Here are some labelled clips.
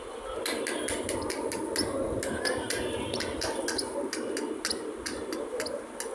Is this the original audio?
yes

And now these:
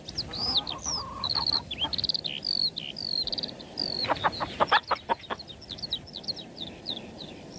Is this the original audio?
yes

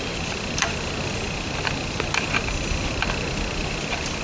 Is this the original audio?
yes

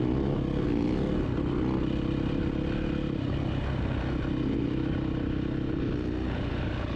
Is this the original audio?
yes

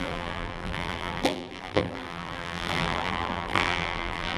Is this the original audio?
no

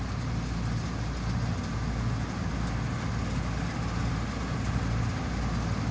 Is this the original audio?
yes